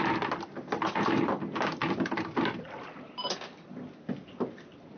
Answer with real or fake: real